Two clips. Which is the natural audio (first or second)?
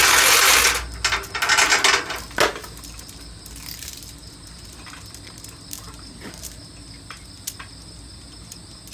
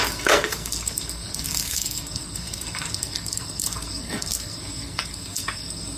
first